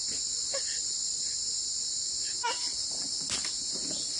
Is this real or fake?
real